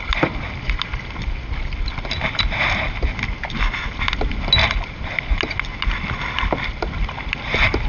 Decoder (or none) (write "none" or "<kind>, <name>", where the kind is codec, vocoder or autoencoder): none